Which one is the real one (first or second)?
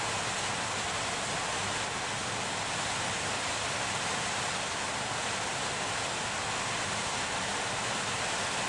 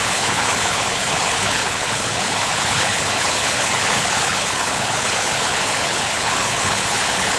first